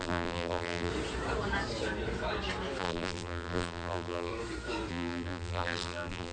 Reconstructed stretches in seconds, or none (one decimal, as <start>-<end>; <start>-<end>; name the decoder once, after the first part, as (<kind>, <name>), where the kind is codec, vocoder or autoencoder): 0.0-0.9 (vocoder, BigVGAN v2); 2.8-4.3; 4.9-6.3